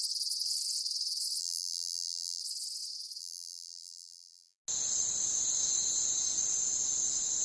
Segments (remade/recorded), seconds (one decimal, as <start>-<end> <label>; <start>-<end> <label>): 0.0-1.4 recorded; 1.4-2.4 remade; 2.4-3.2 recorded; 3.2-4.6 remade; 4.6-7.4 recorded